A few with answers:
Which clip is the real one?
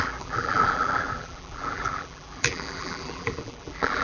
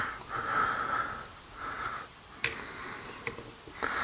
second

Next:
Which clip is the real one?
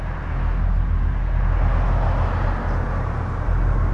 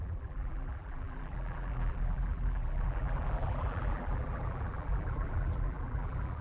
first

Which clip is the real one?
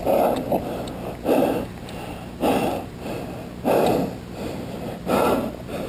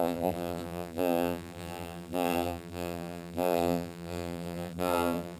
first